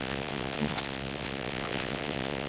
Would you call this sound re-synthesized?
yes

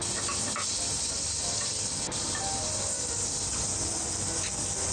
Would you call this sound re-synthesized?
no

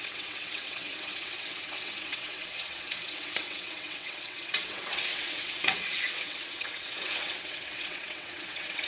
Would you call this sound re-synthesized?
yes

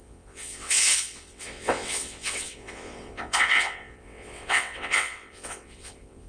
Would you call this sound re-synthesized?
yes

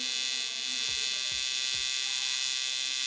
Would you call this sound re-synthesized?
no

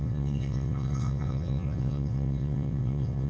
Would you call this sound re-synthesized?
yes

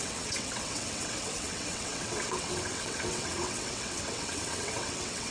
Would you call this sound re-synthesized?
yes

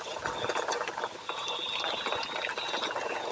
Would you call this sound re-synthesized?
no